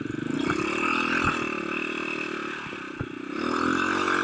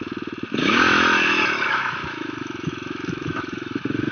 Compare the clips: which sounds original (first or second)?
first